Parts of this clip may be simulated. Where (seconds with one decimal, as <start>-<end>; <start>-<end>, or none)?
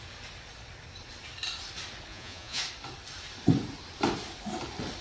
2.1-2.6